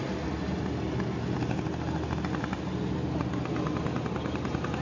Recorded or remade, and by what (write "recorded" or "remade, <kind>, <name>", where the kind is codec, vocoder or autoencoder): recorded